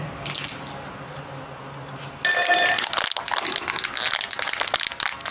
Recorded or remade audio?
recorded